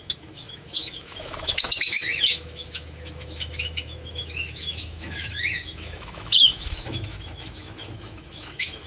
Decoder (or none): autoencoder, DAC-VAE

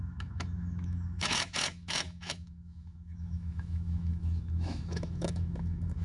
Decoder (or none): autoencoder, DAC-VAE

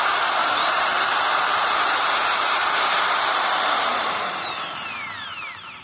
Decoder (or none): vocoder, BigVGAN v2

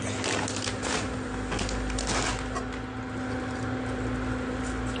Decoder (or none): none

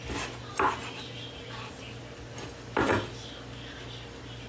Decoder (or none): none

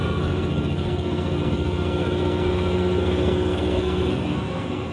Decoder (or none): codec, SNAC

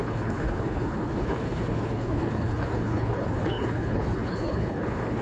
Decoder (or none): codec, HILCodec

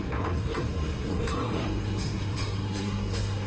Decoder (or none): codec, SNAC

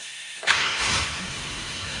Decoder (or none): codec, SNAC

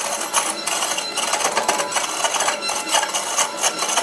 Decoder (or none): none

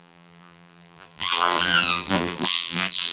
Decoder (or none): vocoder, BigVGAN v2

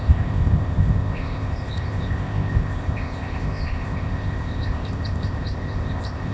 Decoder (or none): codec, ZipCodec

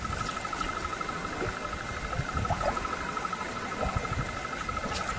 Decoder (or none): none